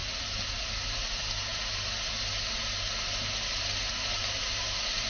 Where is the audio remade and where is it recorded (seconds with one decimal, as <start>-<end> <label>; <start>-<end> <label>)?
0.0-1.5 remade; 1.5-4.6 recorded; 4.6-5.1 remade